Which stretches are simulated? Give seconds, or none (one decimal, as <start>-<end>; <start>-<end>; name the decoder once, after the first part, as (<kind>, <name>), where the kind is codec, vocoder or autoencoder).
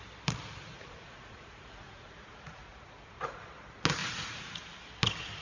0.7-3.4 (vocoder, Vocos); 4.0-4.6